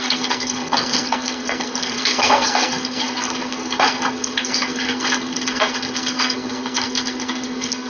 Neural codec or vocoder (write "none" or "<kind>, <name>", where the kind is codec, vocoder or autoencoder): codec, SNAC